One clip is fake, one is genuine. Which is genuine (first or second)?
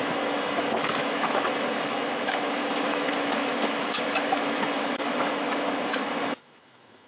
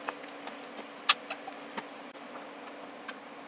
second